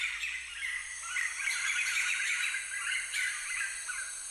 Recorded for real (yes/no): no